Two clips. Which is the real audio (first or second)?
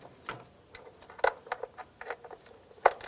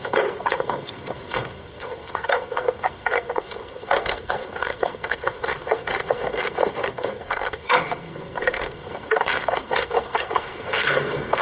first